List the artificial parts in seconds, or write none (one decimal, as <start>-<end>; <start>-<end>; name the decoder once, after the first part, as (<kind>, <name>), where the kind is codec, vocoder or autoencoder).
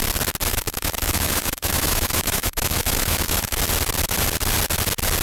0.5-3.6 (autoencoder, DAC-VAE)